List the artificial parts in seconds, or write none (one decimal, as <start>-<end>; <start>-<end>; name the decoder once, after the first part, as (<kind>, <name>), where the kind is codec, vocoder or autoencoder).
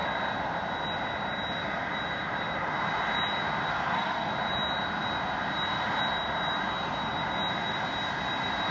3.7-4.3 (codec, SNAC)